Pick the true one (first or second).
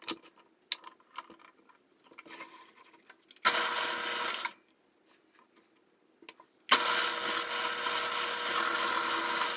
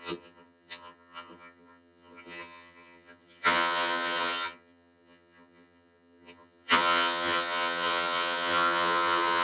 first